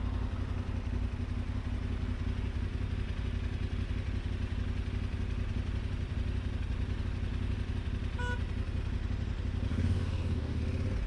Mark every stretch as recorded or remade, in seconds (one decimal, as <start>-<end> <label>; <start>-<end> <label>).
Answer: 0.0-9.7 recorded; 9.7-10.6 remade; 10.6-11.1 recorded